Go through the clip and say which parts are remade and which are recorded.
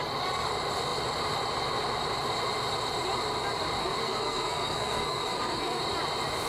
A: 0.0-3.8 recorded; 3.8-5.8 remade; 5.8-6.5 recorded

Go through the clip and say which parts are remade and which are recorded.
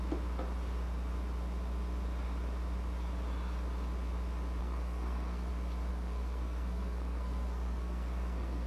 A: 0.0-4.6 recorded; 4.6-5.5 remade; 5.5-5.9 recorded; 5.9-8.7 remade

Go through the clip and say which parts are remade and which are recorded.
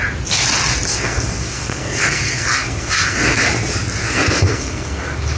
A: 0.0-0.9 recorded; 0.9-3.4 remade; 3.4-4.0 recorded; 4.0-5.4 remade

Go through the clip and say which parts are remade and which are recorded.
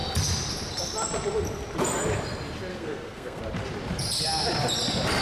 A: 0.0-2.7 recorded; 2.7-3.4 remade; 3.4-5.2 recorded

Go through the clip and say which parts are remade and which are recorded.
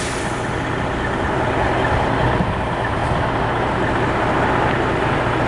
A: 0.0-5.5 recorded